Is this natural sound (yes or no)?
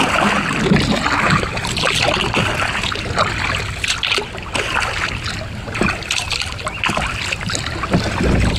yes